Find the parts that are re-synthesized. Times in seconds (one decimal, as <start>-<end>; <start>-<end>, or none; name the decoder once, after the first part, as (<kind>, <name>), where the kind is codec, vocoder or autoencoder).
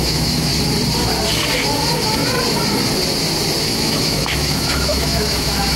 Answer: 0.0-0.5 (autoencoder, DAC-VAE); 3.6-5.8